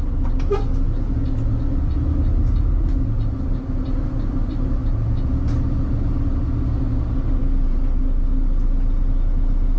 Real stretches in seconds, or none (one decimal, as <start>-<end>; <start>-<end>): 0.0-9.8